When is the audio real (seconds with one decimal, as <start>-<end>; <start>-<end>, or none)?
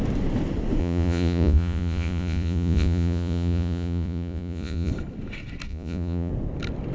0.0-0.8; 4.9-5.7; 6.3-6.9